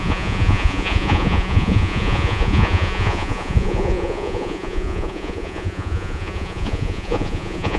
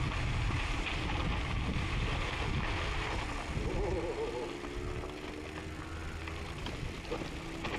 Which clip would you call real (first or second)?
second